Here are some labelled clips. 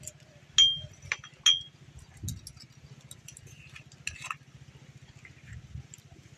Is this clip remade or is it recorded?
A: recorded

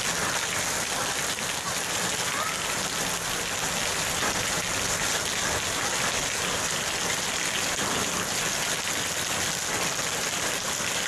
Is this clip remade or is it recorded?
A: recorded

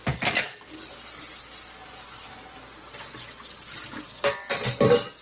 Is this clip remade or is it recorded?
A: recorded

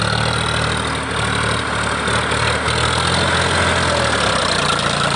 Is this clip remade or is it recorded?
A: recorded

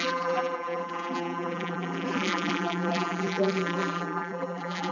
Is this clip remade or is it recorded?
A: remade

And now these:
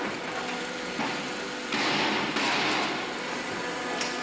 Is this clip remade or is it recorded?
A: recorded